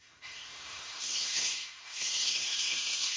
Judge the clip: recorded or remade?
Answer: remade